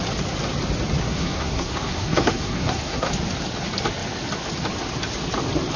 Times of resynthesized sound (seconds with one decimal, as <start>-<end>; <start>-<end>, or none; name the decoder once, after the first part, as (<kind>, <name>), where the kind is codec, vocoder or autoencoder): 1.0-3.1 (codec, SNAC)